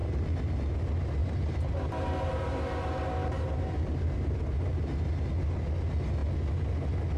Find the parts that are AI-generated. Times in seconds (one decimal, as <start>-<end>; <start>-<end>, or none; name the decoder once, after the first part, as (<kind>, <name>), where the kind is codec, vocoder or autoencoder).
0.0-0.6 (vocoder, BigVGAN v2); 1.2-5.3